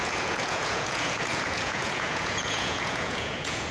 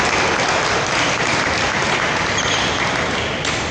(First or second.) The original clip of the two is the second